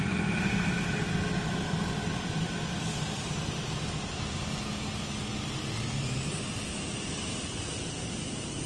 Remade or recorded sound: recorded